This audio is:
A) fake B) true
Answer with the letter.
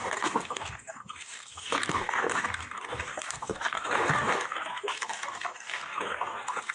A